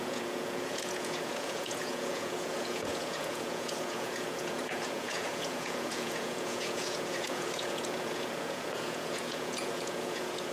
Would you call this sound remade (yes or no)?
yes